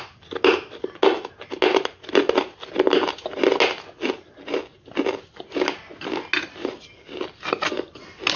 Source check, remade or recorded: recorded